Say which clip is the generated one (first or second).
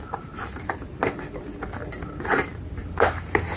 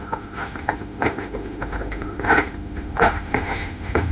second